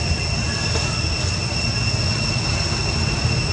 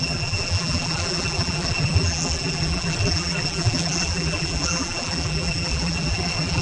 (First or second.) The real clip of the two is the first